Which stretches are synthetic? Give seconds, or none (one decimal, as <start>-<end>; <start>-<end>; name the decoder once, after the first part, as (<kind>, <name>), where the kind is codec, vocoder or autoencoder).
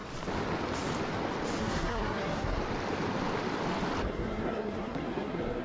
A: 1.6-2.6 (codec, SNAC); 4.1-5.6